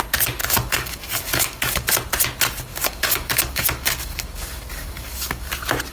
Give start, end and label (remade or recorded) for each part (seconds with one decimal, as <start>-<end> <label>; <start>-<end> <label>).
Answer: 0.0-0.4 recorded; 0.4-1.9 remade; 1.9-2.7 recorded; 2.7-5.5 remade; 5.5-5.9 recorded